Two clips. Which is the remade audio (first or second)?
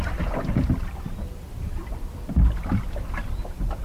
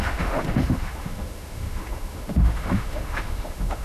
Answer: second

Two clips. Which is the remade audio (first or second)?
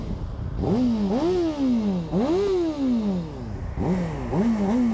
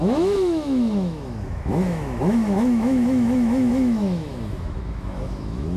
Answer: second